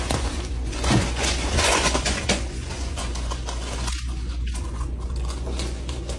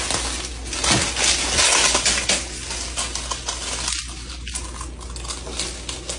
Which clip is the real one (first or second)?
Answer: second